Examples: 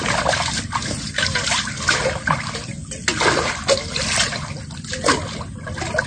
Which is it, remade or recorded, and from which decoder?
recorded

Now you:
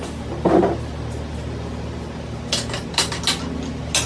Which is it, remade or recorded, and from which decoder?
recorded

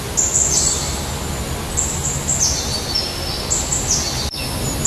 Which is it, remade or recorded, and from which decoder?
recorded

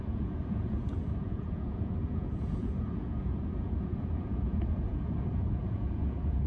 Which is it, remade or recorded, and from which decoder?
remade, vocoder, Vocos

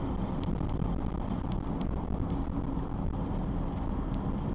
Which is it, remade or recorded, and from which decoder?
recorded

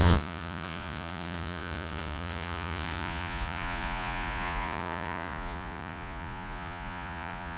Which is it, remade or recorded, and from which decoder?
remade, vocoder, Vocos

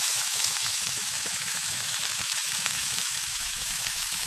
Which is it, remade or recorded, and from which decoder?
remade, autoencoder, DAC-VAE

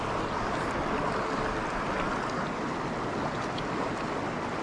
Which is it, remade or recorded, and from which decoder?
recorded